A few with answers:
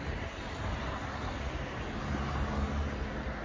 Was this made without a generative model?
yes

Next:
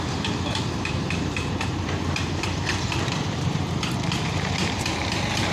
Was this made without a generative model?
no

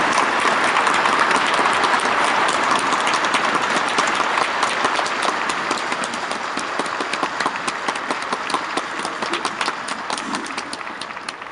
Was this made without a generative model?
yes